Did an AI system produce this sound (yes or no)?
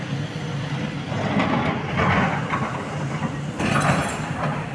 no